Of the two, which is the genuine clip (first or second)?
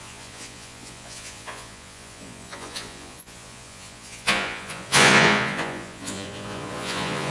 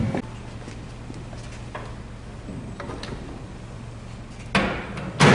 second